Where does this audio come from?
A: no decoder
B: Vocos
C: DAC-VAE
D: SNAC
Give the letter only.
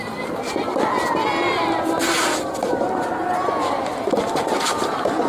A